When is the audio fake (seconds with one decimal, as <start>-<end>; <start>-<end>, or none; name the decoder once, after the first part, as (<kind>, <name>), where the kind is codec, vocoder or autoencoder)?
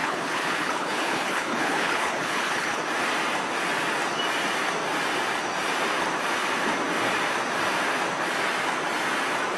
0.0-2.8 (codec, HILCodec)